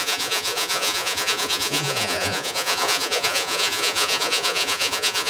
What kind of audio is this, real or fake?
fake